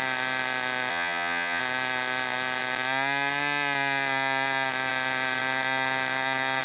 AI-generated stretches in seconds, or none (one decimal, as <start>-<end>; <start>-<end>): 0.9-1.6